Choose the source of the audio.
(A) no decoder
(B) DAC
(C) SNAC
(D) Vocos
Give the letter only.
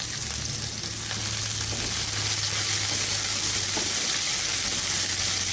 A